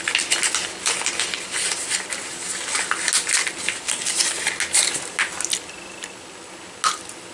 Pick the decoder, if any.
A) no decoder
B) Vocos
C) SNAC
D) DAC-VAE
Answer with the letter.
A